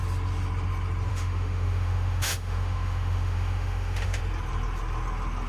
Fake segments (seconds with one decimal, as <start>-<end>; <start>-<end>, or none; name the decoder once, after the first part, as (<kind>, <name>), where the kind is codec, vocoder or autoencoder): 1.1-4.2 (autoencoder, DAC-VAE)